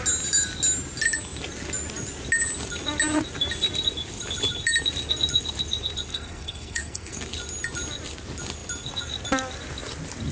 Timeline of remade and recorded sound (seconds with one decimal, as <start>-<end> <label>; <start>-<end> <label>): 0.0-6.1 recorded; 6.1-7.2 remade; 7.2-10.3 recorded